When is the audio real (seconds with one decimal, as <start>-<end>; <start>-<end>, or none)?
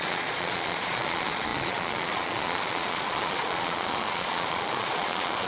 none